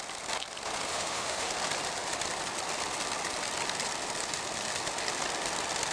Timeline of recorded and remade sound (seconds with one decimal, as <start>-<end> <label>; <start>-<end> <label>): 0.0-0.9 recorded; 0.9-1.5 remade; 1.5-5.9 recorded